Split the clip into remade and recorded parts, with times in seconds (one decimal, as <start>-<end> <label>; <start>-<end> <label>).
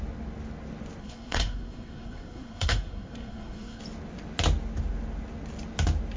0.0-1.0 recorded; 1.0-3.8 remade; 3.8-6.2 recorded